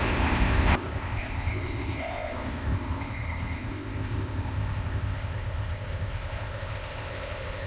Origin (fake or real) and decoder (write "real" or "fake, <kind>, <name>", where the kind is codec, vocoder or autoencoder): fake, codec, ZipCodec